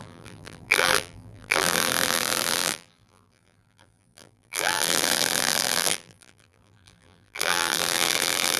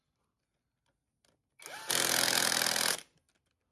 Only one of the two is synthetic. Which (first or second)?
first